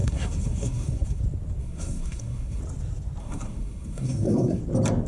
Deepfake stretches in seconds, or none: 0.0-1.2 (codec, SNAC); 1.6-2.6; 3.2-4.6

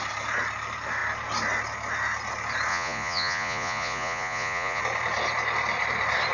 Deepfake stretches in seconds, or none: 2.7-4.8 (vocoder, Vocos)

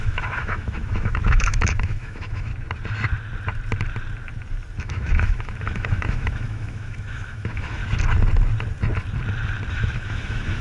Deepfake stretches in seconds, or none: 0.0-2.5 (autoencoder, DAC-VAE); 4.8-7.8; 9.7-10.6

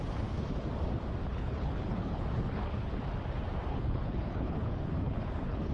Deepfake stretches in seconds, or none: 1.3-3.0 (codec, HILCodec); 3.7-5.7

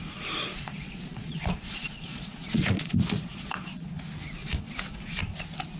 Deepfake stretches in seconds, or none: 0.4-3.9 (vocoder, Vocos); 4.4-5.2

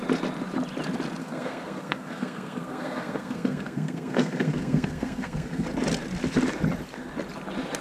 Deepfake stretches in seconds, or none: 1.2-5.7 (codec, SNAC)